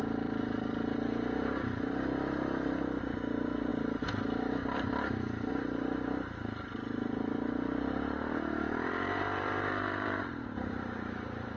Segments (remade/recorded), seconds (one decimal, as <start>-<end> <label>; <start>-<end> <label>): 0.0-3.7 remade; 3.7-5.5 recorded; 5.5-11.6 remade